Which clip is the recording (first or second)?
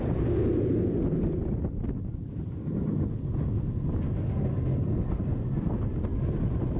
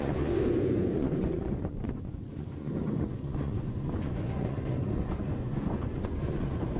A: first